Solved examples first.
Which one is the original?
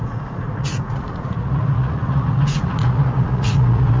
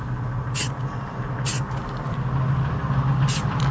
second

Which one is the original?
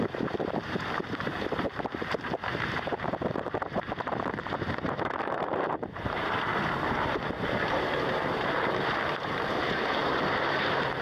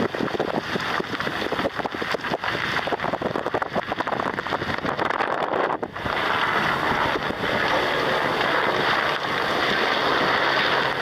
second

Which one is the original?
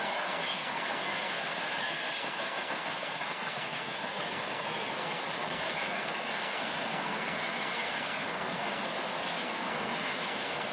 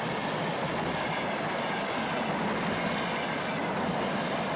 second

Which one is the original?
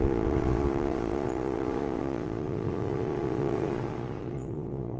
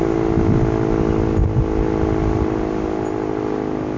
second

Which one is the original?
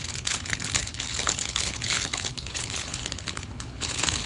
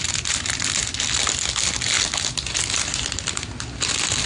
second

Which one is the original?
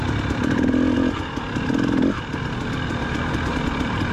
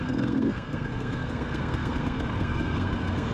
first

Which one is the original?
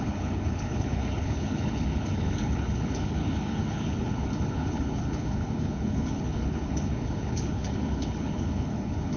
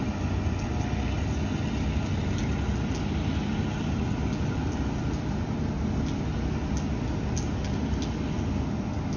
second